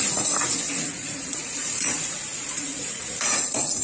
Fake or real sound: fake